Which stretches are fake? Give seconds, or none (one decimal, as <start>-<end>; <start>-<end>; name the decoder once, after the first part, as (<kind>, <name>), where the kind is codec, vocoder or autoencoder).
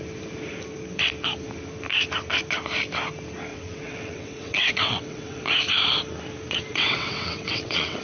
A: 3.5-5.4 (vocoder, WaveNeXt); 6.7-8.0